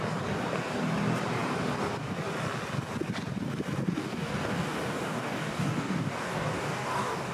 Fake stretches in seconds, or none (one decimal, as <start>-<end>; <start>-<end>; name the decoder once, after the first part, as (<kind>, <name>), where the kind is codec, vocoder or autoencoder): 4.0-7.3 (codec, DAC)